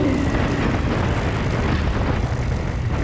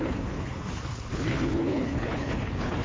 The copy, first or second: second